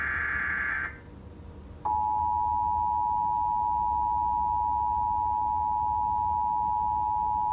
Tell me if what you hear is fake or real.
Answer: real